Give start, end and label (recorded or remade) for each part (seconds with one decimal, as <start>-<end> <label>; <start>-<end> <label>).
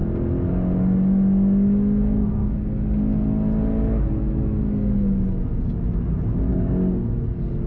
0.0-6.5 recorded; 6.5-7.1 remade; 7.1-7.7 recorded